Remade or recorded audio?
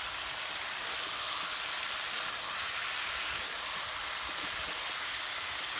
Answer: recorded